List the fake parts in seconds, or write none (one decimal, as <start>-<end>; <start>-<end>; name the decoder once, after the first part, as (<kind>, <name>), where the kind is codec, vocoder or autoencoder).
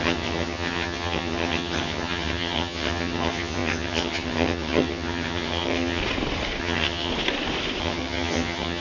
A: 0.0-6.0 (vocoder, HiFi-GAN); 6.6-7.1; 7.8-8.8